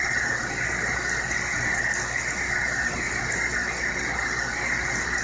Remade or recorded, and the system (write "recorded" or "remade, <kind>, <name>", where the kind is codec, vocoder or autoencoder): recorded